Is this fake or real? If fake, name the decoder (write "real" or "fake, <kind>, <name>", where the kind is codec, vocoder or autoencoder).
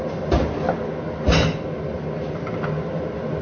real